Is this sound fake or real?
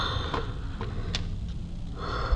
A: real